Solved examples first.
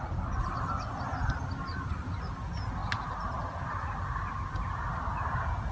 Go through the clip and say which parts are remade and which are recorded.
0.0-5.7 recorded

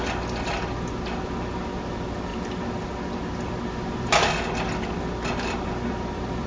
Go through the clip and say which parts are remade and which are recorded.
0.0-6.5 recorded

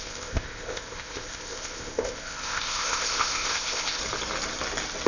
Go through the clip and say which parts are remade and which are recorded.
0.0-4.0 remade; 4.0-5.1 recorded

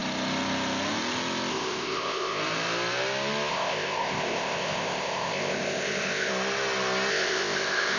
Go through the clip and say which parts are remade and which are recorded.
0.0-1.5 recorded; 1.5-2.4 remade; 2.4-3.5 recorded; 3.5-6.3 remade; 6.3-7.1 recorded; 7.1-8.0 remade